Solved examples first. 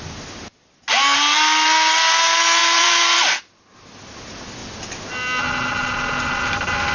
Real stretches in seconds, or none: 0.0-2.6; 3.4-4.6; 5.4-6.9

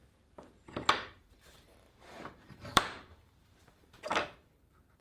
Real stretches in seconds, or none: 0.0-1.2

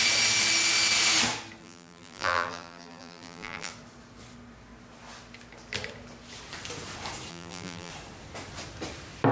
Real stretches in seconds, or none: 0.0-1.6; 3.7-7.3; 7.9-9.3

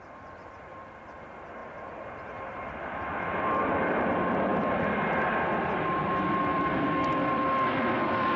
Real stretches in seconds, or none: 1.6-2.1

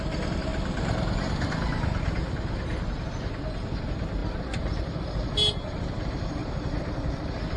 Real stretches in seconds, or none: 0.0-4.2; 5.0-6.4

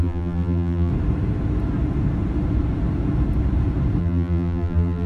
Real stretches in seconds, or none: 0.9-4.0

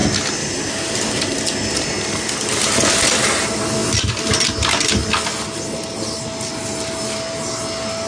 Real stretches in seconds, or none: 0.9-3.8; 4.5-8.1